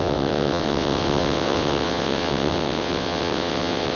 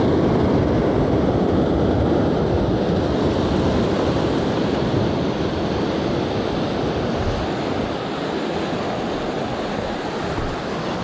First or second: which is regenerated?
first